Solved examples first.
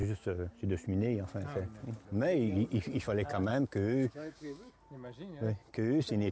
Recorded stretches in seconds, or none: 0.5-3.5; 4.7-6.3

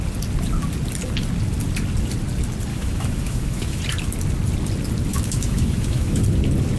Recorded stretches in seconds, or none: 0.0-2.7; 3.8-5.1; 6.2-6.8

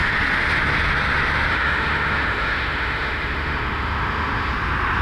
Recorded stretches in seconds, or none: 0.0-1.5; 4.5-5.0

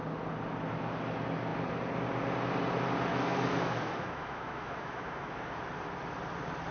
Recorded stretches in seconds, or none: 0.0-3.1; 5.6-6.7

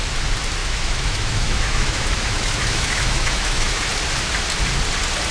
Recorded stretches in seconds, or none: 0.0-0.6; 3.8-5.3

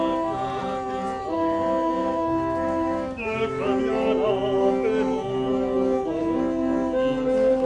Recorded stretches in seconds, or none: 0.0-2.0; 3.8-7.7

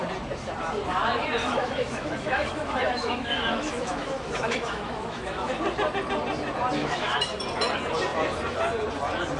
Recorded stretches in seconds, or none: 0.0-1.4; 5.6-6.8; 7.4-9.4

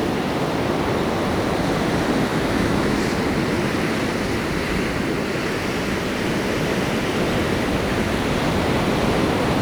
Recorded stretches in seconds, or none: 0.0-2.3; 3.0-9.6